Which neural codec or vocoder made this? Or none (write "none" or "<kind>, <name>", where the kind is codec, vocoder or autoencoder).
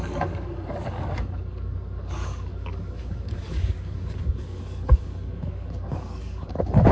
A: codec, DAC